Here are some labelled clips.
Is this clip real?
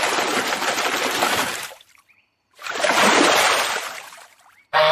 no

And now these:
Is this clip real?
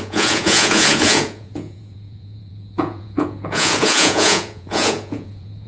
no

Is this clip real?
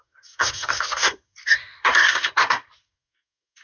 no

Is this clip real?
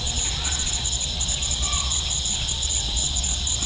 no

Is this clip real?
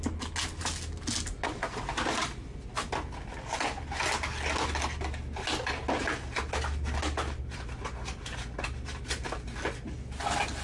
yes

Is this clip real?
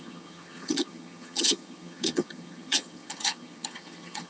no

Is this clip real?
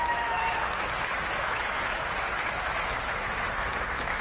no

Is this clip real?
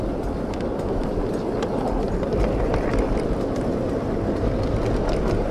yes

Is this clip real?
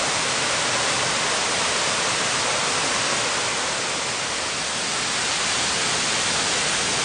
yes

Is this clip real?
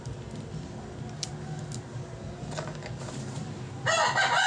yes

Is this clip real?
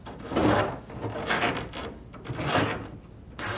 yes